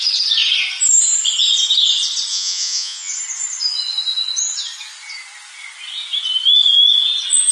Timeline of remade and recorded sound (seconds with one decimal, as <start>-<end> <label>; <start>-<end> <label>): 0.0-2.3 recorded; 2.3-3.1 remade; 3.1-7.5 recorded